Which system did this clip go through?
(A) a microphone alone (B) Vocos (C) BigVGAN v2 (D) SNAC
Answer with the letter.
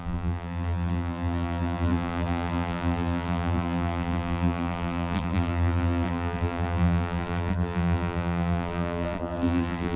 C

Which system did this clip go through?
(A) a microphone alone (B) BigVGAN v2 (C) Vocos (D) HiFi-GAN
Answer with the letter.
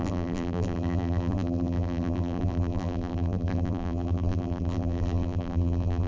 B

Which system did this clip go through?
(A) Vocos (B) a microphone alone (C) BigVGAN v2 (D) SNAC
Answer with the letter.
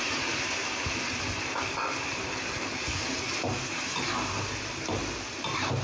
C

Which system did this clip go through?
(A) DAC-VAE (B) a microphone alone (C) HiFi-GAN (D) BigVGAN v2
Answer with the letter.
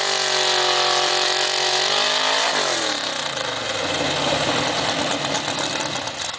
B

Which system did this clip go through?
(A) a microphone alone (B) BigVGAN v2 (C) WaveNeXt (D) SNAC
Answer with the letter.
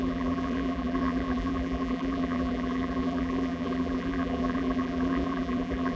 B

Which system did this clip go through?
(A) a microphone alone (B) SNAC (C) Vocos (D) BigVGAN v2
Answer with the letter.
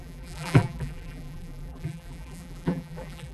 D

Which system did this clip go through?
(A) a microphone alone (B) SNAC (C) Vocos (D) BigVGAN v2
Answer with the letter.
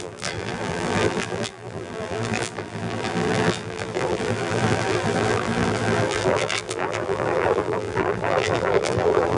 D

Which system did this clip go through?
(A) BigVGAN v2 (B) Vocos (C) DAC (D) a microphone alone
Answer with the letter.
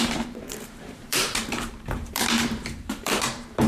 A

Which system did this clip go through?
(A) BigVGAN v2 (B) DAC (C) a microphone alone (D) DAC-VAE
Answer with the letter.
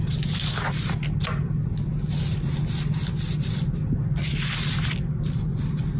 C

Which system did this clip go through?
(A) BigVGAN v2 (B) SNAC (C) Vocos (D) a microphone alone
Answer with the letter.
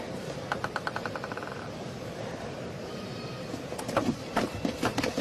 A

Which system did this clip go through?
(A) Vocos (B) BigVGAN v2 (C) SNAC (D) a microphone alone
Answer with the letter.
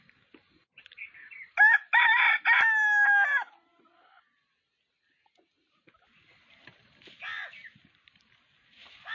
D